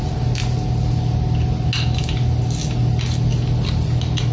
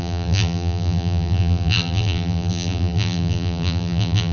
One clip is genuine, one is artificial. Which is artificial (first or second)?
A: second